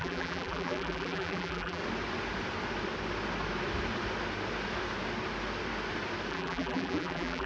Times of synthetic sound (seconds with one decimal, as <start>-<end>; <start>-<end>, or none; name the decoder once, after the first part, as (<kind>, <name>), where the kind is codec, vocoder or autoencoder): 0.0-1.8 (vocoder, BigVGAN v2); 6.3-7.5